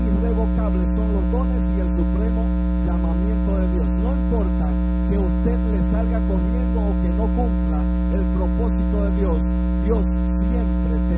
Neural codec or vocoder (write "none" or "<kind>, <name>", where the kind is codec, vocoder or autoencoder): none